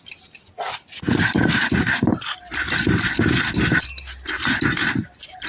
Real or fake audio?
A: real